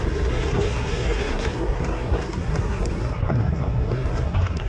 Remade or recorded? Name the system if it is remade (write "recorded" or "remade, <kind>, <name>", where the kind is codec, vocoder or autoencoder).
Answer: remade, codec, SNAC